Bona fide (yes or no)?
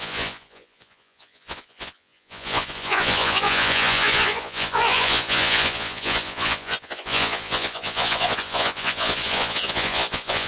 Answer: no